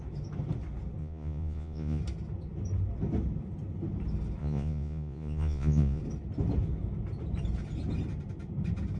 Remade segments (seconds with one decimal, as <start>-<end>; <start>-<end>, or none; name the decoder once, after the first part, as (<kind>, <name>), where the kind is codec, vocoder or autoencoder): 1.0-2.0 (vocoder, Vocos); 4.4-6.0